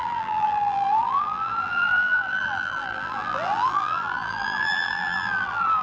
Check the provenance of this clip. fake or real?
fake